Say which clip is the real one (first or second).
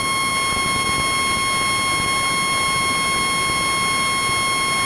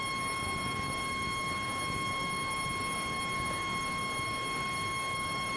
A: first